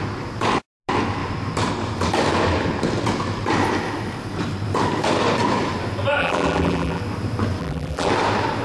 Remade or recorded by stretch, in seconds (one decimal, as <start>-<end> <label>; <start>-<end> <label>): 0.0-6.2 recorded; 6.2-7.0 remade; 7.0-7.6 recorded; 7.6-8.1 remade; 8.1-8.6 recorded